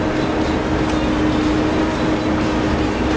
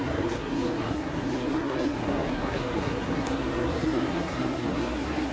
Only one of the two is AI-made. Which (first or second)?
second